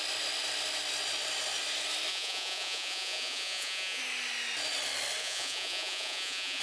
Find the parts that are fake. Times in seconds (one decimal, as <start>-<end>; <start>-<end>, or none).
2.1-4.0; 5.2-6.6